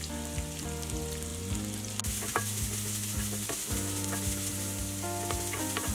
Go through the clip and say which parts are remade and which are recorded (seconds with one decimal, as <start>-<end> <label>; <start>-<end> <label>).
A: 0.0-5.9 recorded